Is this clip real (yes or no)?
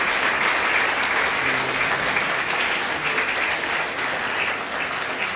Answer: yes